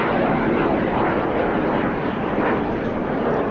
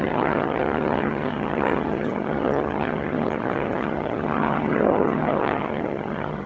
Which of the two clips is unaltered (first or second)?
first